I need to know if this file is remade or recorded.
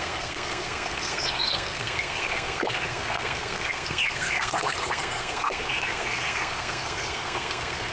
remade